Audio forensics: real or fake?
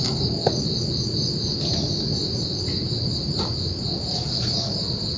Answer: real